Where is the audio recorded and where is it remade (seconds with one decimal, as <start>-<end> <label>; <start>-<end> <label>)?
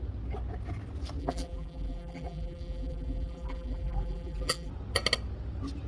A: 0.0-1.2 recorded; 1.2-4.7 remade; 4.7-5.9 recorded